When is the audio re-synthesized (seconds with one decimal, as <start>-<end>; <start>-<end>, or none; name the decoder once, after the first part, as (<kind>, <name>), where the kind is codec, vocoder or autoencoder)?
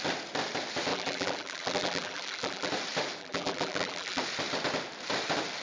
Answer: 0.9-2.7 (vocoder, BigVGAN v2); 3.2-4.2